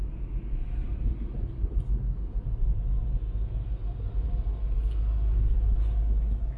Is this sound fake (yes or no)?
no